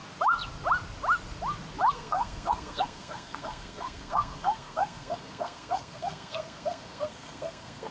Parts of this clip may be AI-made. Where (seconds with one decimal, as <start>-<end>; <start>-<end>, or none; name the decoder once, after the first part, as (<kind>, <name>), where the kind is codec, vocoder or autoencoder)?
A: 1.9-7.9 (codec, SNAC)